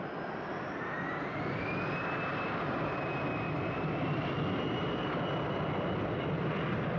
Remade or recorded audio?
recorded